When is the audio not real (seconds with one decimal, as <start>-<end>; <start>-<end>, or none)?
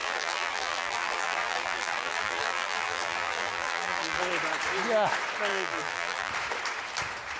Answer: 0.0-4.2; 5.5-6.3